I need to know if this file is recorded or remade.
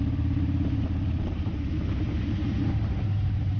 remade